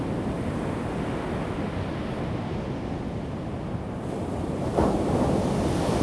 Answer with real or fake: real